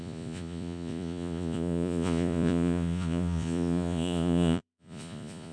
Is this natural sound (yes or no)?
no